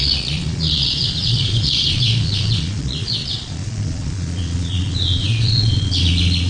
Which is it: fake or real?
fake